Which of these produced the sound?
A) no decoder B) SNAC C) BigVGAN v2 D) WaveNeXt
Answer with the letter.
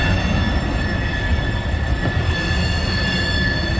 A